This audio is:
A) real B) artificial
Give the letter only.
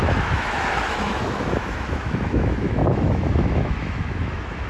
B